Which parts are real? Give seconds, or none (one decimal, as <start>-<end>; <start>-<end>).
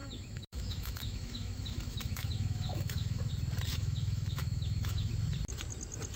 3.3-3.7; 5.1-6.2